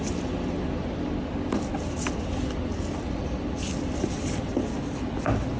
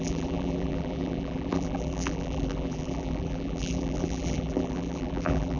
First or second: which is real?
first